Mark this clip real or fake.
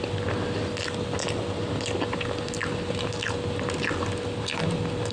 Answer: real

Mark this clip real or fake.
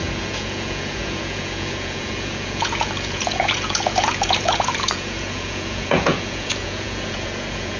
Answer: fake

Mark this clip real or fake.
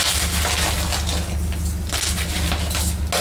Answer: real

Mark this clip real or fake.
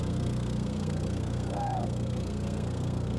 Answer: fake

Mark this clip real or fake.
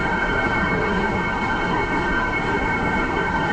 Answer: fake